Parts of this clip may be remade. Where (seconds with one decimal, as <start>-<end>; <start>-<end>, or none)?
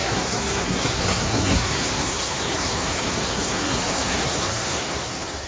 0.0-5.5